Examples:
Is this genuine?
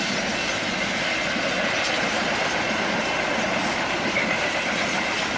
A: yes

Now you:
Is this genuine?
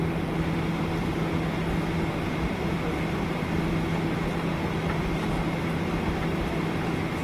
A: yes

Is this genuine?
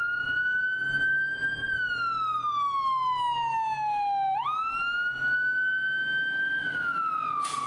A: yes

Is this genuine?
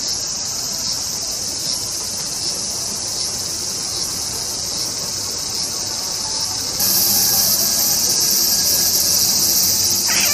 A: yes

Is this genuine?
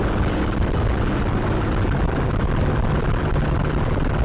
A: yes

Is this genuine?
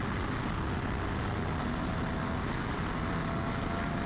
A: yes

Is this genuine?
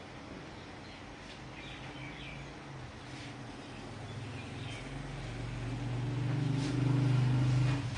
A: yes